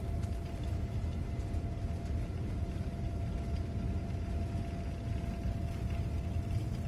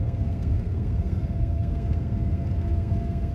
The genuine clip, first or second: first